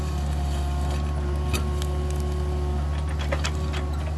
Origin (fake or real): real